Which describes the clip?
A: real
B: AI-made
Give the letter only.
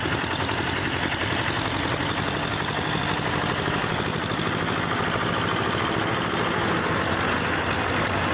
A